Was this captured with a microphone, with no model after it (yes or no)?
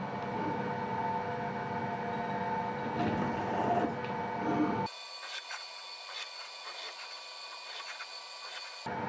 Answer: yes